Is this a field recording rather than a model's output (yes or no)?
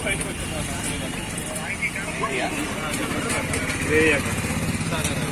yes